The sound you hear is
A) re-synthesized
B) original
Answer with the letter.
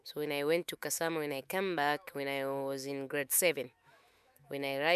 A